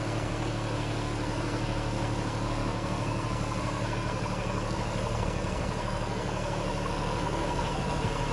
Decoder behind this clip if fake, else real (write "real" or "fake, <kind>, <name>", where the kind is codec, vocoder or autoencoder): fake, codec, SNAC